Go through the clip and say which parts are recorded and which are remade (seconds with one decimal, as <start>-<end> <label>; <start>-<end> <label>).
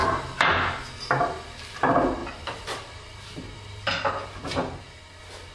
0.0-2.2 recorded; 2.2-4.1 remade; 4.1-5.5 recorded